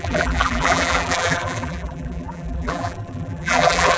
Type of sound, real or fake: fake